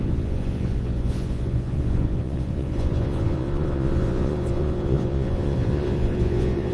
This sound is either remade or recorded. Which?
remade